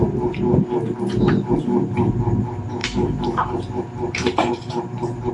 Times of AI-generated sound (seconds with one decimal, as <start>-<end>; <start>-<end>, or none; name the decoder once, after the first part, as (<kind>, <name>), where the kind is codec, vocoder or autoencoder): 2.8-5.3 (vocoder, BigVGAN v2)